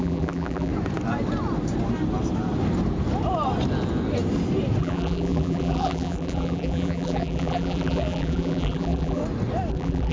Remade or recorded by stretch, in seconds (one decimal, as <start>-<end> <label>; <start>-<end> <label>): 0.0-0.7 remade; 0.7-4.8 recorded; 4.8-9.2 remade; 9.2-9.7 recorded; 9.7-10.1 remade